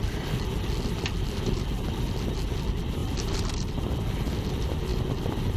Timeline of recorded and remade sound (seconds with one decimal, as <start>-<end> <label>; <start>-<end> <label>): 0.0-5.6 recorded